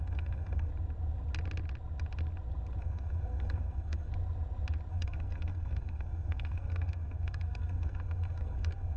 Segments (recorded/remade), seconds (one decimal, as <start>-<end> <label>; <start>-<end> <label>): 0.0-0.7 remade; 0.7-2.8 recorded; 2.8-4.1 remade; 4.1-4.9 recorded; 4.9-9.0 remade